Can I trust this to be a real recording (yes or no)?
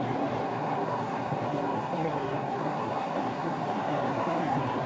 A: no